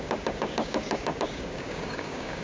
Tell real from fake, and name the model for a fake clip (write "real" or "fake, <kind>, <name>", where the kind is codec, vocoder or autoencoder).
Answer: fake, codec, DAC